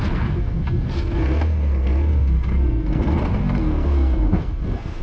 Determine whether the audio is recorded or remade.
remade